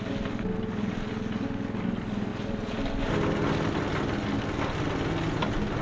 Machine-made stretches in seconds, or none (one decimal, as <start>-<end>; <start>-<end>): none